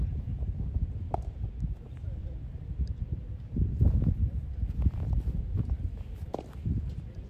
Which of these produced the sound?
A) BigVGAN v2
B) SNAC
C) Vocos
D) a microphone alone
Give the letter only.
A